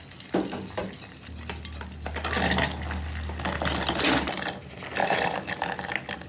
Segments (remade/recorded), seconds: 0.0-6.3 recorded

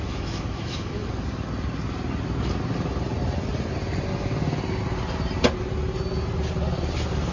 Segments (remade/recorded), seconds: 0.0-1.1 remade; 1.1-7.3 recorded

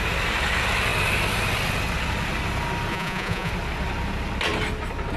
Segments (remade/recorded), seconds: 0.0-2.9 recorded; 2.9-3.5 remade; 3.5-5.2 recorded

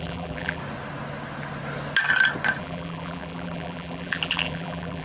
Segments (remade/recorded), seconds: 0.0-0.6 remade; 0.6-2.6 recorded; 2.6-5.0 remade